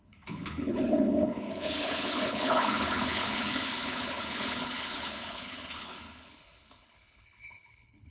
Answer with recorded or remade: remade